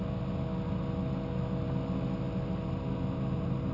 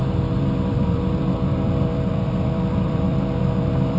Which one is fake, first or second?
second